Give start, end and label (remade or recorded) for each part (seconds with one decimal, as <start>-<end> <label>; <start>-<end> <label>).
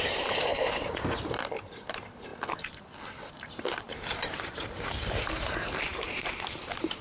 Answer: 0.0-2.3 remade; 2.3-3.5 recorded; 3.5-7.0 remade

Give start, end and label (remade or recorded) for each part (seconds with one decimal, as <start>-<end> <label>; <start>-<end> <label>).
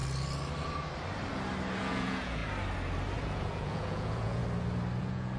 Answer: 0.0-1.8 recorded; 1.8-2.4 remade; 2.4-3.2 recorded; 3.2-4.4 remade; 4.4-5.0 recorded; 5.0-5.4 remade